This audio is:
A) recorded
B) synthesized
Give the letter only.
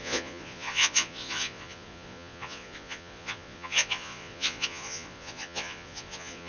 B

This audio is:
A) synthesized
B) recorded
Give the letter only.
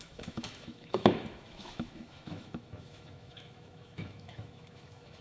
A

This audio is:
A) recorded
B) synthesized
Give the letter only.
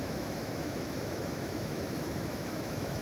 B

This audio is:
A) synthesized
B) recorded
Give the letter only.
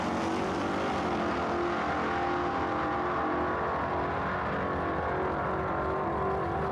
B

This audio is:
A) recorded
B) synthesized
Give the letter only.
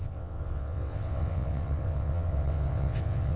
B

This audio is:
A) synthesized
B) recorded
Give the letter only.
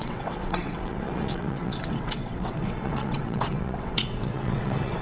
A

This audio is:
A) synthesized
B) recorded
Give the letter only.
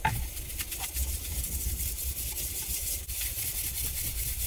B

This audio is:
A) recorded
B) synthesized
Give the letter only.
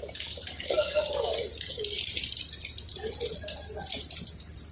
A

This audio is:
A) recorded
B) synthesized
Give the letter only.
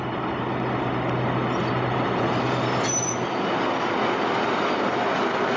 A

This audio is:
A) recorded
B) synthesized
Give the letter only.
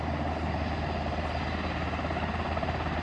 A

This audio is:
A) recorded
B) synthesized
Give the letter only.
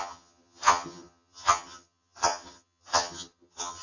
B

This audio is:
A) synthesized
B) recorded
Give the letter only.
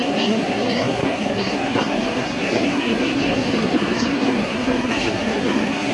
A